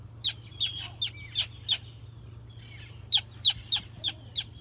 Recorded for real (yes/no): yes